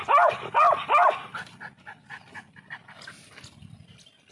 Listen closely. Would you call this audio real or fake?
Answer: real